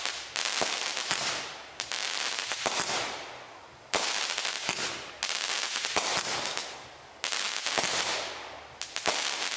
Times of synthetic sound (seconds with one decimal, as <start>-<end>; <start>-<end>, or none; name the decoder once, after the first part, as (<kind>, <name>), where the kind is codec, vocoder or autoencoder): 0.9-5.1 (vocoder, BigVGAN v2)